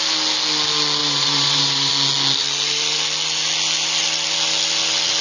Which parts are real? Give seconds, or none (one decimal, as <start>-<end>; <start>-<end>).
0.0-1.0; 1.9-5.2